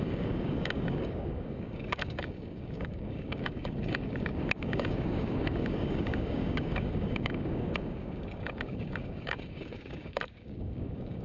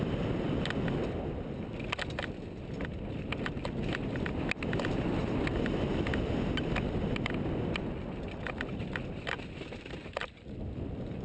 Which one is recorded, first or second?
second